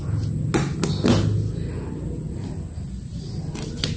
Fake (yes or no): no